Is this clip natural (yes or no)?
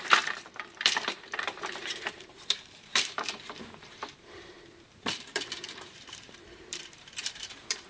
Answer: no